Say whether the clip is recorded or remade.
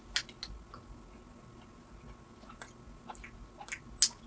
recorded